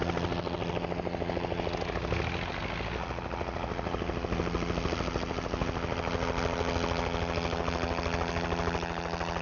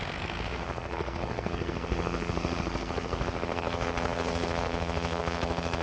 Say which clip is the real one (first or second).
first